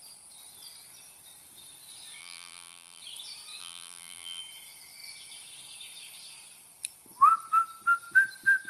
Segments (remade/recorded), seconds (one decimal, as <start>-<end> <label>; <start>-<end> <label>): 0.0-2.2 recorded; 2.2-3.0 remade; 3.0-3.6 recorded; 3.6-4.4 remade; 4.4-8.7 recorded